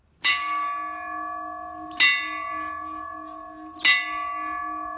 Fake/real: real